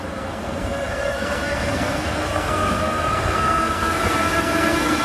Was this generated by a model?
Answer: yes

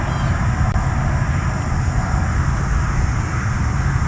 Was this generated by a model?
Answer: no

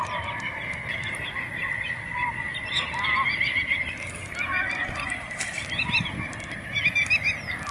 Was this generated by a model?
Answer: no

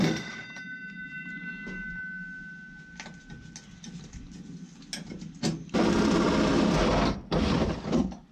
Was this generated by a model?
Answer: no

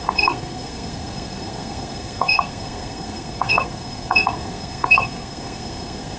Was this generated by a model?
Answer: yes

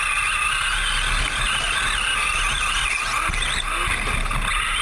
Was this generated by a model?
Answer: no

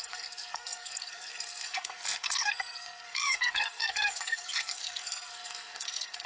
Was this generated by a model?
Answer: yes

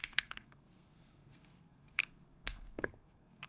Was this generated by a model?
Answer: yes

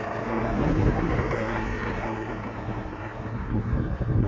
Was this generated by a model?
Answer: yes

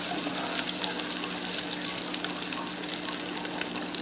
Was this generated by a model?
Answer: no